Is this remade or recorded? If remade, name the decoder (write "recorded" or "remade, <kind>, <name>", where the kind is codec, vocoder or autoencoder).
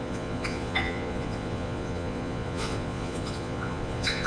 remade, vocoder, Vocos